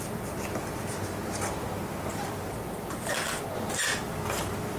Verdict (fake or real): real